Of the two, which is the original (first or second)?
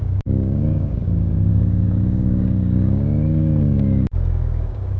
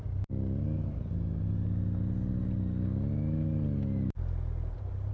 second